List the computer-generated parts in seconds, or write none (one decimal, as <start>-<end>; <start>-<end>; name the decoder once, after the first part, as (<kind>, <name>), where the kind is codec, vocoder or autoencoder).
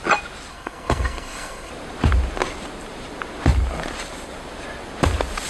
0.5-1.7 (codec, SNAC)